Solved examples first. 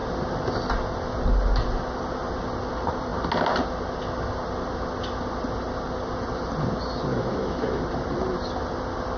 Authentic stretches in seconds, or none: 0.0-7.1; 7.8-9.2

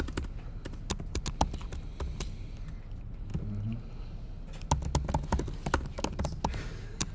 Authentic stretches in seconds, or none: 0.0-7.1